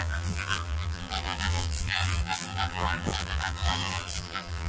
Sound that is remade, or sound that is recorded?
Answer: remade